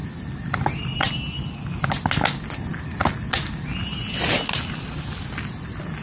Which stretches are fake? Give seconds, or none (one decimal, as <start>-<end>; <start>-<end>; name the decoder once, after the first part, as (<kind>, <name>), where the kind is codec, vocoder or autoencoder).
none